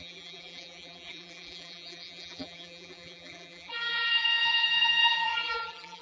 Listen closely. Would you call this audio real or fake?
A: fake